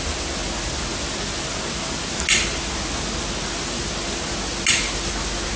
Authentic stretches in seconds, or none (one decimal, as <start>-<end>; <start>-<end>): 0.0-5.6